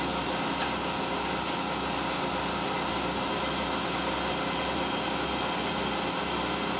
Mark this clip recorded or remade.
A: recorded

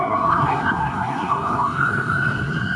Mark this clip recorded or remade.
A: remade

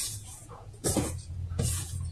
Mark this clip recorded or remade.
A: remade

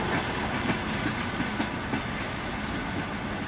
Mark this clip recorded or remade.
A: recorded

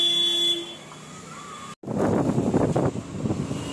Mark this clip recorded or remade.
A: recorded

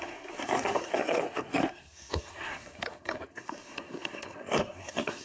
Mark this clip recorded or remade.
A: remade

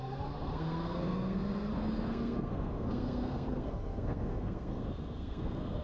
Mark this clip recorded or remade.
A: remade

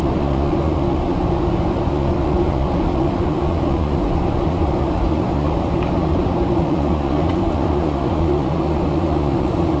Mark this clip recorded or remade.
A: remade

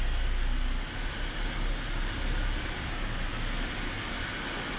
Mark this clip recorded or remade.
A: recorded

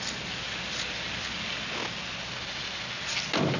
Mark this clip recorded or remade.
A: recorded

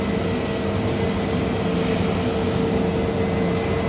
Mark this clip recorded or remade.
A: recorded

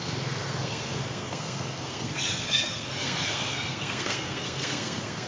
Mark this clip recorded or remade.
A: remade